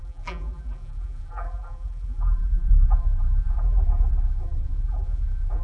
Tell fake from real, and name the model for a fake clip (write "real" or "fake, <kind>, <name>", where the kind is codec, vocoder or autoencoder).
fake, vocoder, BigVGAN v2